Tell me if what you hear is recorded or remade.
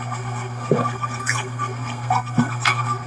remade